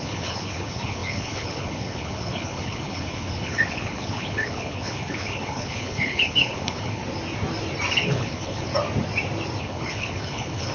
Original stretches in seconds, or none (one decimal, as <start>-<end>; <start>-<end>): 7.0-7.9; 8.7-9.6